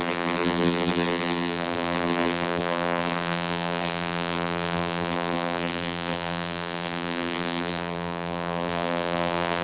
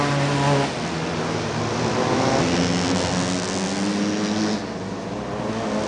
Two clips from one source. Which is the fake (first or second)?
first